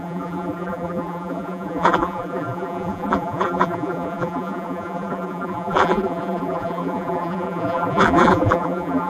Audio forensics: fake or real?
fake